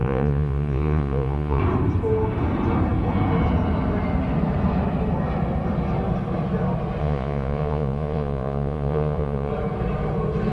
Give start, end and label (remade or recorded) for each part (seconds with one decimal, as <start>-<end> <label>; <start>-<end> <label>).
0.0-1.6 remade; 1.6-7.0 recorded; 7.0-9.5 remade; 9.5-10.5 recorded